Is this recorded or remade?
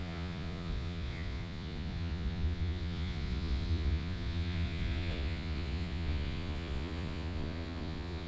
remade